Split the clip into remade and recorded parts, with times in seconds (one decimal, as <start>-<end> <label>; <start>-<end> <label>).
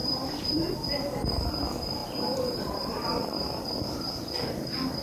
0.0-0.7 remade; 0.7-2.0 recorded; 2.0-4.1 remade; 4.1-5.0 recorded